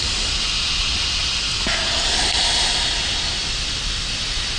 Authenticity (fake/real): real